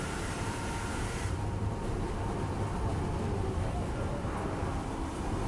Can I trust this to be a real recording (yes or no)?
no